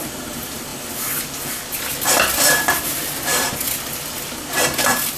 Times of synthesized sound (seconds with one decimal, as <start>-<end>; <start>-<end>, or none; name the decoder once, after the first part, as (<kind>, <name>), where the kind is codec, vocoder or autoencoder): none